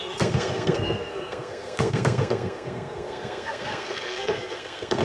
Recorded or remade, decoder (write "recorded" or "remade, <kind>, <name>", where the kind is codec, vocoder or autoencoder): remade, codec, SNAC